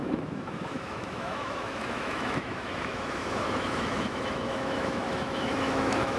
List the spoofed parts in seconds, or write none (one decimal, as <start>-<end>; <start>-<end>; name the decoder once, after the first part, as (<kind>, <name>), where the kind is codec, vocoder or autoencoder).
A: 0.0-6.2 (autoencoder, DAC-VAE)